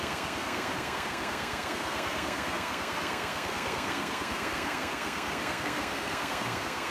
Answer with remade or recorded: remade